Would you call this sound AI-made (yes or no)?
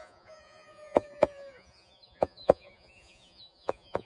yes